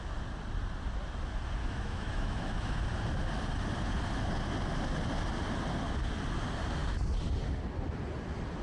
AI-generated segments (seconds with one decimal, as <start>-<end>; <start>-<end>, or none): 1.6-2.8